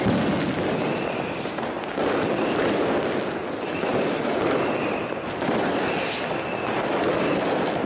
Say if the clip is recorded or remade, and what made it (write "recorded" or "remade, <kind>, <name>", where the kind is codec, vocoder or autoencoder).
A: recorded